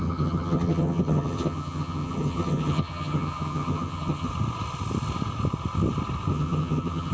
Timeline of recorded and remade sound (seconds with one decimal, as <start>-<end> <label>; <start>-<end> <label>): 0.0-4.3 remade; 4.3-6.3 recorded; 6.3-7.1 remade